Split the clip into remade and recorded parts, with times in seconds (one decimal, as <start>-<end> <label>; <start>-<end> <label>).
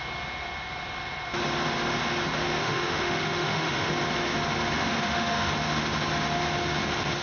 0.0-2.6 recorded; 2.6-3.9 remade; 3.9-4.8 recorded; 4.8-5.5 remade; 5.5-7.2 recorded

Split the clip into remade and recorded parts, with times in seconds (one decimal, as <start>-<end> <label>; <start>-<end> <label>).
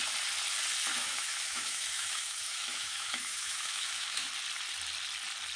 0.0-0.9 recorded; 0.9-4.3 remade; 4.3-5.6 recorded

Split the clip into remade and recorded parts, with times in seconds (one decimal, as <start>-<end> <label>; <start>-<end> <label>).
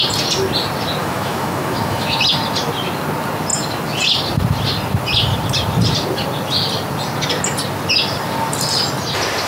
0.0-1.0 recorded; 1.0-2.2 remade; 2.2-9.5 recorded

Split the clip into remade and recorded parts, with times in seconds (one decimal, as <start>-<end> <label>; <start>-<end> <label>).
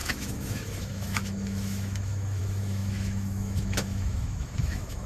0.0-5.1 remade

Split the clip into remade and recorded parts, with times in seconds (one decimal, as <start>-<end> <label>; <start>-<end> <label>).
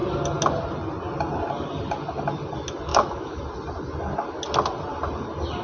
0.0-2.9 recorded; 2.9-3.4 remade; 3.4-5.6 recorded